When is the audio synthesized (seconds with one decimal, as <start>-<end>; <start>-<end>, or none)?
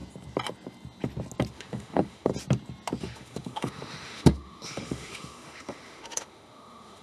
1.5-2.3; 3.0-7.0